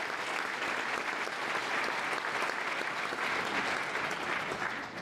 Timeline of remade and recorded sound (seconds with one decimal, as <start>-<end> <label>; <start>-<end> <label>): 0.0-5.0 recorded